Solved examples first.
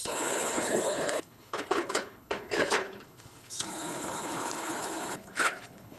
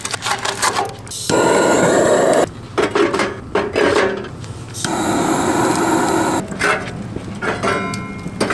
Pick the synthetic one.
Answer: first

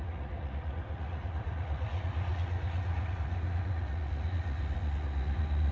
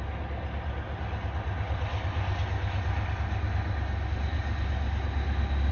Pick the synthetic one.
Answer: first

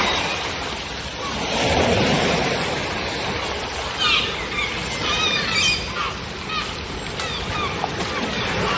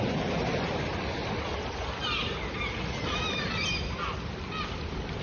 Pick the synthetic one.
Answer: second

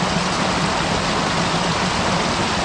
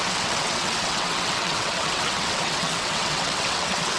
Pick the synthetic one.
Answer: second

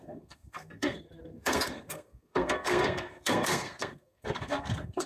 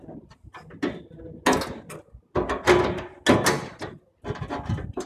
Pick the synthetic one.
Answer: first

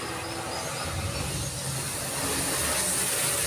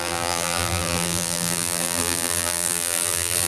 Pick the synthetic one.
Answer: second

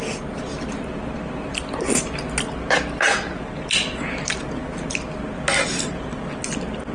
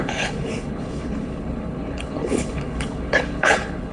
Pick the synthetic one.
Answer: second